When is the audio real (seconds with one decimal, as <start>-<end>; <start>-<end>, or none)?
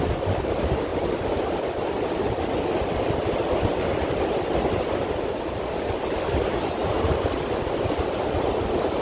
0.0-0.9; 1.4-6.8; 8.5-9.0